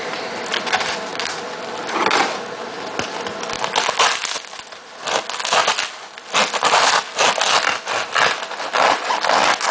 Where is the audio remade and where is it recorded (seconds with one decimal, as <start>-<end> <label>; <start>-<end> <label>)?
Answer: 0.0-9.7 recorded